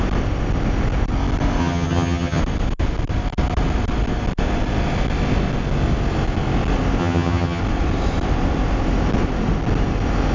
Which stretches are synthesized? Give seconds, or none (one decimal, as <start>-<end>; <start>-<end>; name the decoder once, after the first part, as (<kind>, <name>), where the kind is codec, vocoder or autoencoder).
1.6-2.4 (vocoder, HiFi-GAN); 7.0-7.6